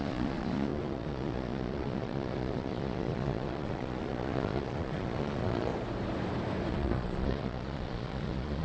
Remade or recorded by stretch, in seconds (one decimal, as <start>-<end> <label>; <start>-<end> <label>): 0.0-5.7 remade; 5.7-6.7 recorded; 6.7-8.6 remade